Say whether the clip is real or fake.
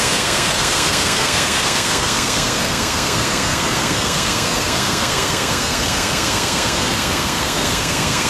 fake